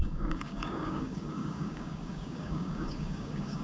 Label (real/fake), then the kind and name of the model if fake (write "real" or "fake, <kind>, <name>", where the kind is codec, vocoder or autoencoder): fake, codec, DAC